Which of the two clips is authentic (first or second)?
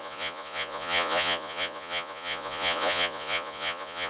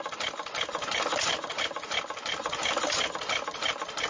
second